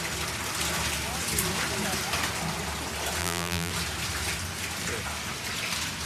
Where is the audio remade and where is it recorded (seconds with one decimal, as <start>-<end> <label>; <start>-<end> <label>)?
0.0-3.2 recorded; 3.2-3.7 remade; 3.7-6.1 recorded